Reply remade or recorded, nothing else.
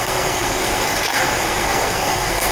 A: remade